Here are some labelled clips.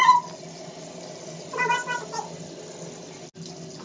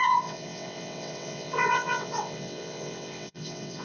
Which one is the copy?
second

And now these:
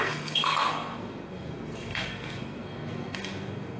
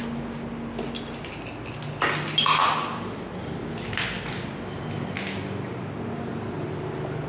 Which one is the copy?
first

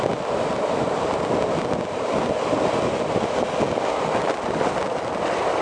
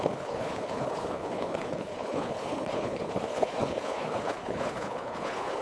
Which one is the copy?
second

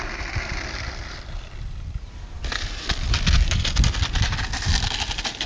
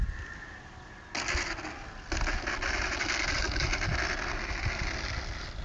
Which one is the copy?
first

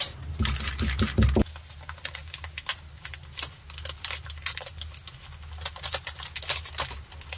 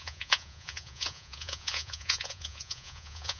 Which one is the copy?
second